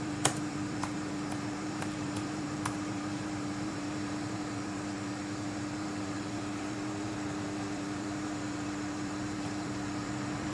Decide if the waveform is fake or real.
fake